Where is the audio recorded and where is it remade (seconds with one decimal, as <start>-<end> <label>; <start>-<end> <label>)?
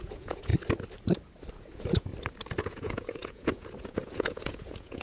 0.0-0.5 remade; 0.5-1.6 recorded; 1.6-2.1 remade; 2.1-2.6 recorded; 2.6-5.0 remade